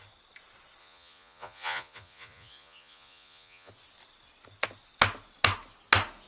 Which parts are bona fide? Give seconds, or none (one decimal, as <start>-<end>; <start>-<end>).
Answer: 0.0-0.8; 3.7-6.3

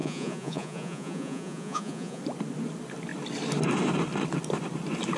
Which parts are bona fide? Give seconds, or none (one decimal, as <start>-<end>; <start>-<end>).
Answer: 2.2-5.2

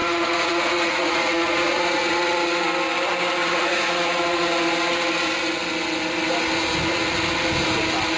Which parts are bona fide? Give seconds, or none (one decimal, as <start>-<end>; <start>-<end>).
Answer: 2.6-3.4; 4.5-8.2

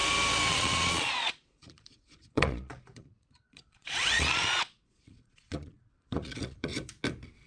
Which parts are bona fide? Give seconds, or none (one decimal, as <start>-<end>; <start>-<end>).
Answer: 0.0-0.5; 6.7-7.5

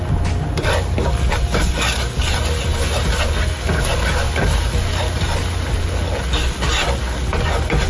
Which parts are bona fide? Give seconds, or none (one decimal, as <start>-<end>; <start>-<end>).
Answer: 0.0-7.9